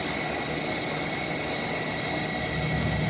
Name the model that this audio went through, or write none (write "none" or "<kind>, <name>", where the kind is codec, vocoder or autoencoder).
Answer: none